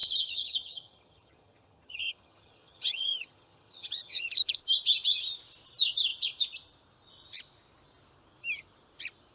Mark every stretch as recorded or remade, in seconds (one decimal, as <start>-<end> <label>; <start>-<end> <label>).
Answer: 0.0-4.3 remade; 4.3-9.3 recorded